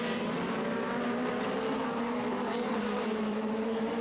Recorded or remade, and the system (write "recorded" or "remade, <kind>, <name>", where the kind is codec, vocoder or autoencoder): remade, vocoder, BigVGAN v2